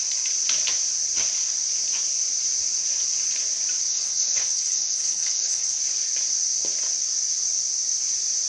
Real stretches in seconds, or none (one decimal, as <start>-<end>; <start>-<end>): 0.0-3.9; 5.8-8.5